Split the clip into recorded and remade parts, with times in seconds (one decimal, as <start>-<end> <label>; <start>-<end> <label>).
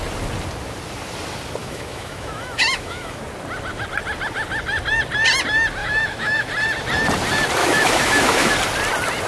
0.0-1.6 recorded; 1.6-3.2 remade; 3.2-5.8 recorded; 5.8-6.5 remade; 6.5-7.6 recorded; 7.6-8.5 remade; 8.5-9.3 recorded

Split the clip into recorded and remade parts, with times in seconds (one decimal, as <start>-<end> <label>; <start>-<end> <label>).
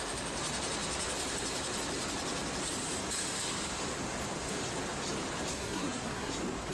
0.0-5.5 recorded; 5.5-6.3 remade; 6.3-6.7 recorded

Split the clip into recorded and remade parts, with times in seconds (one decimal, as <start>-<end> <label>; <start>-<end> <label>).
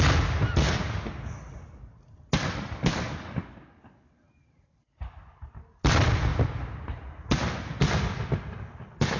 0.0-9.2 recorded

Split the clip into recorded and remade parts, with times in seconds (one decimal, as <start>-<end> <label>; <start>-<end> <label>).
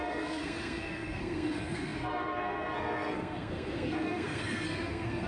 0.0-5.3 remade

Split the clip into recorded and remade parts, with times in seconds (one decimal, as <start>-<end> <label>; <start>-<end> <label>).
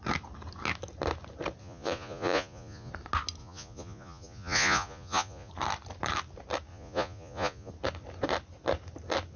0.0-1.6 recorded; 1.6-2.9 remade; 2.9-3.4 recorded; 3.4-5.5 remade; 5.5-6.7 recorded; 6.7-7.7 remade; 7.7-9.4 recorded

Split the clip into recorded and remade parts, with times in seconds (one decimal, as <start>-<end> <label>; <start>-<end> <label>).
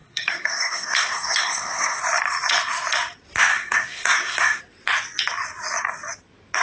0.0-2.0 remade; 2.0-3.5 recorded; 3.5-4.6 remade; 4.6-6.6 recorded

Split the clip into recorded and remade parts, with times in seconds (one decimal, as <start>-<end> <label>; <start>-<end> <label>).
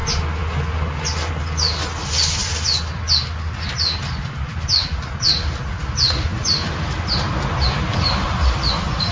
0.0-2.4 recorded; 2.4-3.1 remade; 3.1-6.3 recorded; 6.3-9.1 remade